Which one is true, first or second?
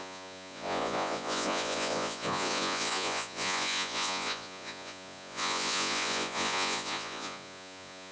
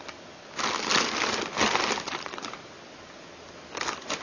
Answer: second